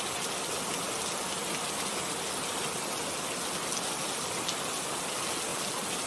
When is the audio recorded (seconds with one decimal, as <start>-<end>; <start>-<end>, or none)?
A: 0.0-6.1